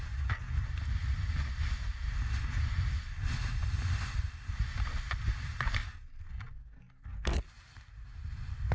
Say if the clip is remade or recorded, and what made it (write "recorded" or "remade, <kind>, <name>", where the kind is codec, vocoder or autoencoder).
recorded